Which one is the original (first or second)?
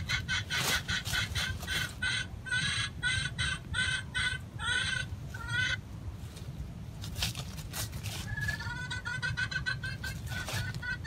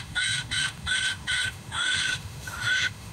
first